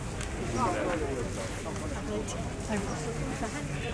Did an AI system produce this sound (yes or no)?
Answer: no